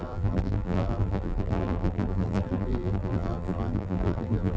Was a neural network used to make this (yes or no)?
yes